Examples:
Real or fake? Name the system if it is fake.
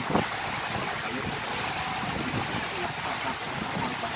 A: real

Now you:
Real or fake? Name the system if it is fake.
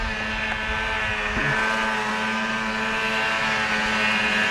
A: real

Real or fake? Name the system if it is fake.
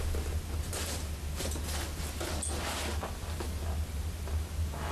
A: real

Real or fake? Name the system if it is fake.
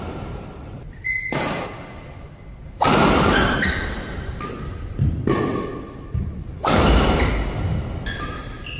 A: real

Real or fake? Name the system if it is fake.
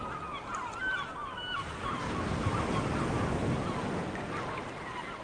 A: real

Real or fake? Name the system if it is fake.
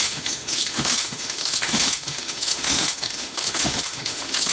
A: fake, autoencoder, DAC-VAE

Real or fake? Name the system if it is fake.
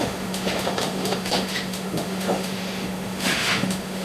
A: fake, autoencoder, DAC-VAE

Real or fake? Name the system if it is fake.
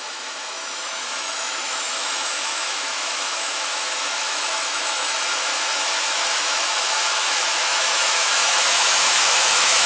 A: fake, autoencoder, DAC-VAE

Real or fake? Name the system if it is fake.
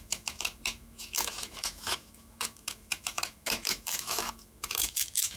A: fake, autoencoder, DAC-VAE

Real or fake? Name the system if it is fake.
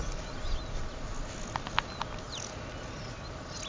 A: real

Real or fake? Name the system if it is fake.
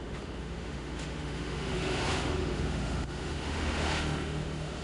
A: fake, autoencoder, DAC-VAE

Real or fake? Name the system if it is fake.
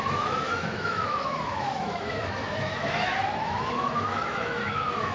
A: fake, autoencoder, DAC-VAE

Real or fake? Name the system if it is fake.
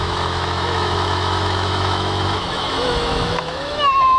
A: fake, autoencoder, DAC-VAE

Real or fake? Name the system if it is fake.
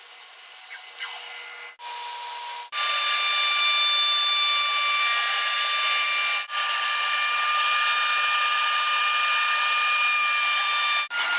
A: real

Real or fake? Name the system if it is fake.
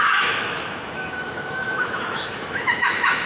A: fake, autoencoder, DAC-VAE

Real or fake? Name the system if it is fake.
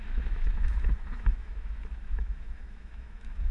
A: fake, autoencoder, DAC-VAE